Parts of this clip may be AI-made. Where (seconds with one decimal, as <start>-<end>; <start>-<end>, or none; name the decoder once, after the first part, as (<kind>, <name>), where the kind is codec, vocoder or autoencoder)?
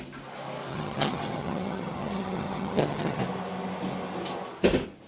0.7-3.2 (vocoder, HiFi-GAN)